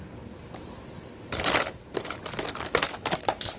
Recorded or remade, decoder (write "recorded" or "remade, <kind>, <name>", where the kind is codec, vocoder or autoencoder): recorded